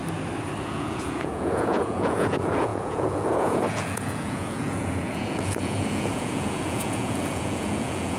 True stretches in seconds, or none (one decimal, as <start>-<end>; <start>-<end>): 0.0-0.6